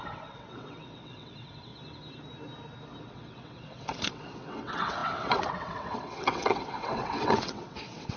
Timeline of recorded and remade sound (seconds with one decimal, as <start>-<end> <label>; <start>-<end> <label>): 0.0-1.7 remade; 1.7-3.0 recorded; 3.0-8.2 remade